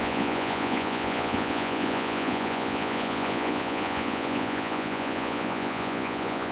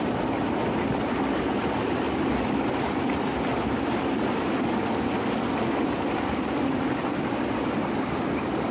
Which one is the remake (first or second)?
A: first